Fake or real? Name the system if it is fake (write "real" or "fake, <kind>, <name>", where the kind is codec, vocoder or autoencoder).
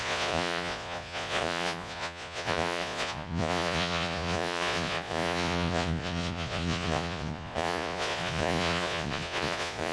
fake, vocoder, Vocos